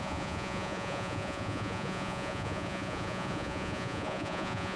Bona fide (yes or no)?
no